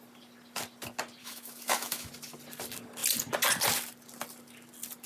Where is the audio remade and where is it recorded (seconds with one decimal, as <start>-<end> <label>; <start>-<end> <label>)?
0.0-1.2 recorded; 1.2-2.1 remade; 2.1-5.1 recorded